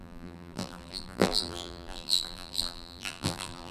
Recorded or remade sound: remade